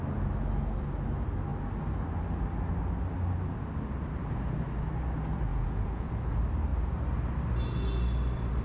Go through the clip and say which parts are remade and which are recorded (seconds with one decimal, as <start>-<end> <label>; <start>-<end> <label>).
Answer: 0.0-5.5 recorded; 5.5-6.1 remade; 6.1-8.6 recorded